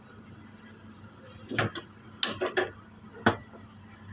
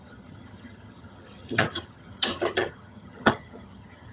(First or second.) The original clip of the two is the first